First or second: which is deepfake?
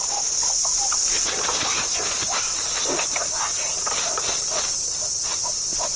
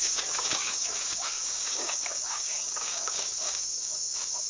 second